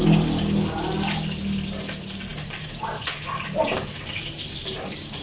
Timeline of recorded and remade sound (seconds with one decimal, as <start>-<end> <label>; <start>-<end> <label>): 0.0-5.2 recorded